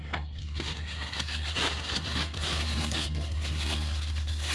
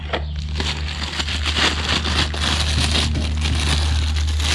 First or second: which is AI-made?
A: first